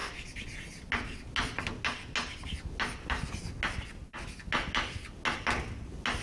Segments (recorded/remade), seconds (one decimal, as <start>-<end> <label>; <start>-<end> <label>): 0.0-6.2 recorded